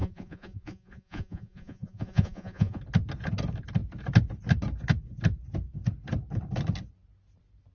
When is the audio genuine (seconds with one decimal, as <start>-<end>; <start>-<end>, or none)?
2.8-7.7